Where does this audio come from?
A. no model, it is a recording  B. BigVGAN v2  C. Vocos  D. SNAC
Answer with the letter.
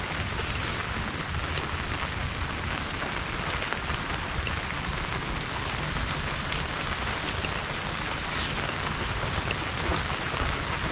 A